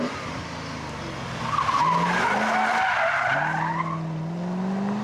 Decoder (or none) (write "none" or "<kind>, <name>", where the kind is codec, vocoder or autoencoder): none